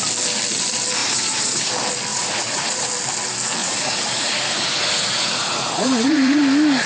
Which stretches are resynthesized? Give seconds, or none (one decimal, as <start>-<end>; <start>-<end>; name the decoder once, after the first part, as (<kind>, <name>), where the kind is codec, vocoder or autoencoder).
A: 1.0-1.7 (vocoder, Vocos); 2.1-2.9; 3.6-6.4